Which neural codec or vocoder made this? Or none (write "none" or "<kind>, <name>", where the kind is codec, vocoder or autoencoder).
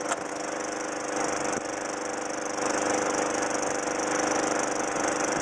none